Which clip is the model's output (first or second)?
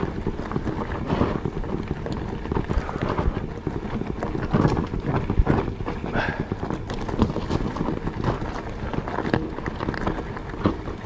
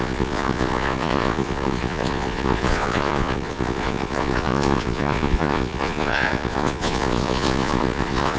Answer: second